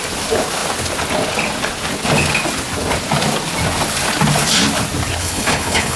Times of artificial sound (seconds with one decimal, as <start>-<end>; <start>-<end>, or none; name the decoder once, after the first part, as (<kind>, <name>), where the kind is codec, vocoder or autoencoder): 5.2-6.0 (codec, HILCodec)